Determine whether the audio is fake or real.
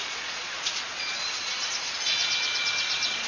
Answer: fake